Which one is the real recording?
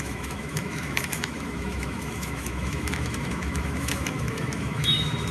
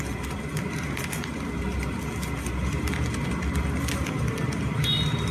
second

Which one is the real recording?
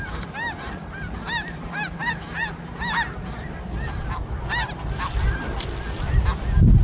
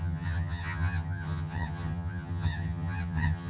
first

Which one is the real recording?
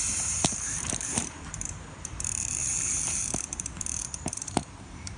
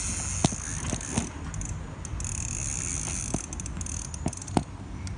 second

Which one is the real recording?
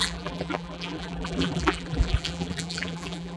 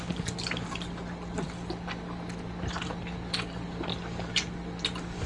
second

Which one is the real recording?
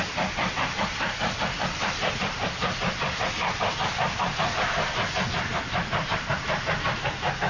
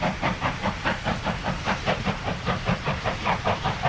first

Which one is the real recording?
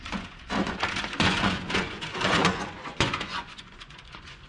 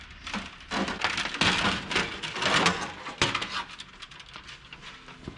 second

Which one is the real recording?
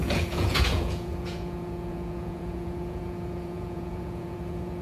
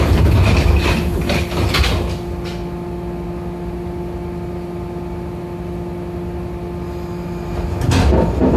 second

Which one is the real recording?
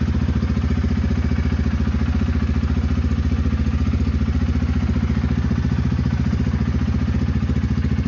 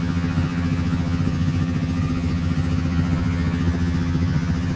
first